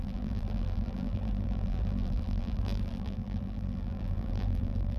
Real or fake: fake